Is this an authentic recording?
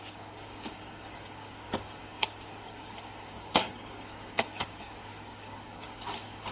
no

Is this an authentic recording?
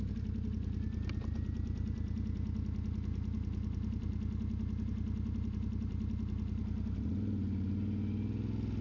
yes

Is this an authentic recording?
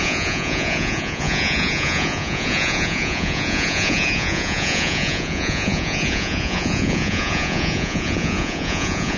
no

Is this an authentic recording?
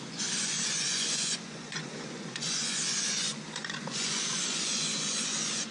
no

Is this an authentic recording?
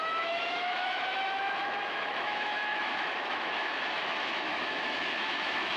no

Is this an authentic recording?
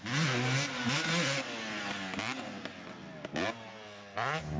yes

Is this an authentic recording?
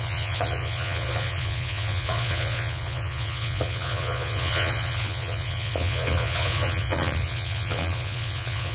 no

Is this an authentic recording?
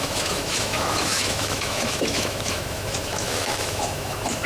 no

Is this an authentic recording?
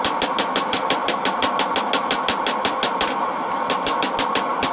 yes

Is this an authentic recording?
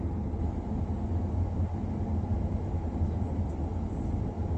yes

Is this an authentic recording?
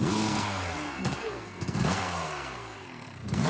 no